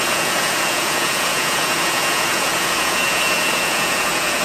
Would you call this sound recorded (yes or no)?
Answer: no